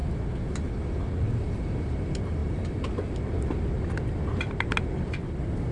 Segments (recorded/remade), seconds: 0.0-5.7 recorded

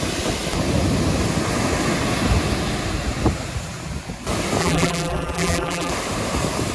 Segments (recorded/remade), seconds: 0.0-4.6 recorded; 4.6-5.9 remade; 5.9-6.7 recorded

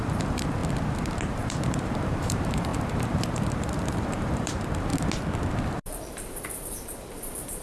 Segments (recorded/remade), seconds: 0.0-0.6 remade; 0.6-1.3 recorded; 1.3-4.9 remade; 4.9-5.6 recorded; 5.6-7.6 remade

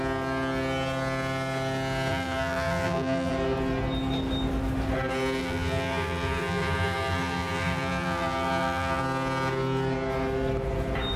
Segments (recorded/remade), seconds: 0.0-2.1 recorded; 2.1-3.3 remade; 3.3-5.4 recorded; 5.4-9.0 remade; 9.0-11.2 recorded

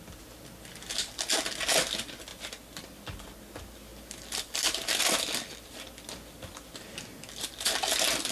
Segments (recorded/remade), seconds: 0.0-3.9 recorded; 3.9-6.7 remade; 6.7-8.3 recorded

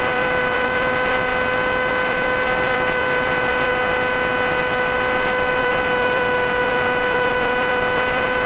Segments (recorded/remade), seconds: 0.0-1.3 remade; 1.3-1.9 recorded; 1.9-3.7 remade; 3.7-4.6 recorded; 4.6-8.5 remade

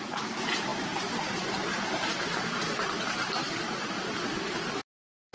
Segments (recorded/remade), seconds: 0.0-5.3 remade